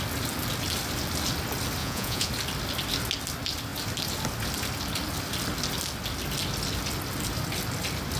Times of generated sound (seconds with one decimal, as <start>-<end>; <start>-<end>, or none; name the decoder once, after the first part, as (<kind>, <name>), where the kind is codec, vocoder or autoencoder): 1.8-2.3 (vocoder, Vocos)